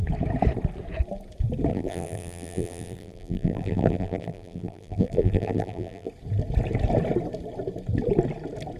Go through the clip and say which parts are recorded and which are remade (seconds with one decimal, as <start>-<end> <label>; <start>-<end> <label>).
0.0-1.7 recorded; 1.7-6.1 remade; 6.1-8.8 recorded